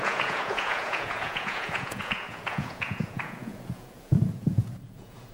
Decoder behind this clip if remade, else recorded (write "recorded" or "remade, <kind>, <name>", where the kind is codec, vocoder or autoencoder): remade, vocoder, Vocos